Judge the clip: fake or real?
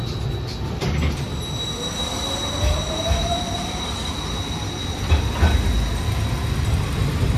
real